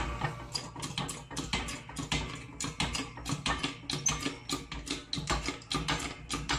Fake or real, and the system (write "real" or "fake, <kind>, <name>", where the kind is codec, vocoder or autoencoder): real